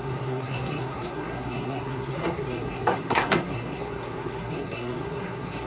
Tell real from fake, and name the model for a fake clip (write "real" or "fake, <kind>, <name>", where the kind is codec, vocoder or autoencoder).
fake, codec, SNAC